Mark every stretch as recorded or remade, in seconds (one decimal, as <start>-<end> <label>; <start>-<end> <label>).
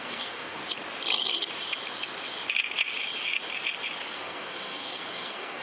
0.0-0.6 remade; 0.6-4.0 recorded; 4.0-5.6 remade